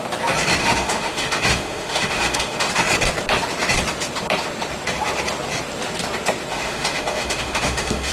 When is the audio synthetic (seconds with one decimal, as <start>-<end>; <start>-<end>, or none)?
0.6-2.7; 6.5-8.1